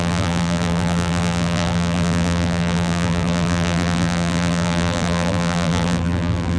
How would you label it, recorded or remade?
remade